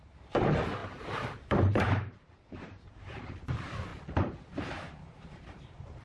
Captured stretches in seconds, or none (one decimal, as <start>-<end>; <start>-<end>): 3.9-4.6